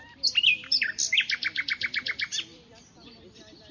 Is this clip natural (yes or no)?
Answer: no